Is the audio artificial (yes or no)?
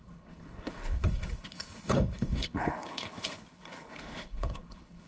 yes